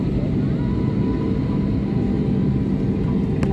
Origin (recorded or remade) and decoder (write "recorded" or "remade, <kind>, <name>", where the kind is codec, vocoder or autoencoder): recorded